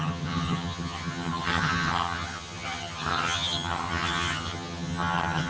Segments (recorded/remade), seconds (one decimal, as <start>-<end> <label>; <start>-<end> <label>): 0.0-5.5 remade